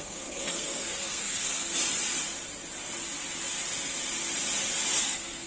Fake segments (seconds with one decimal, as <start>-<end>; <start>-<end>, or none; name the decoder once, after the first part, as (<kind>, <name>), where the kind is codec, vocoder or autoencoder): 0.0-1.7 (codec, SNAC); 5.0-5.5